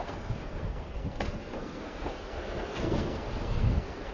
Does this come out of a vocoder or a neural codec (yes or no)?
yes